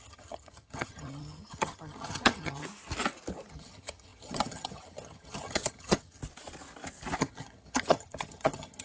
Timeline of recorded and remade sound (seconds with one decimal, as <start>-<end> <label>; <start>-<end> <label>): 0.0-2.6 remade; 2.6-3.5 recorded; 3.5-6.2 remade; 6.2-7.2 recorded; 7.2-8.8 remade